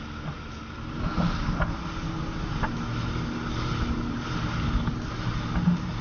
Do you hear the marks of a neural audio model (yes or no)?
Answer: no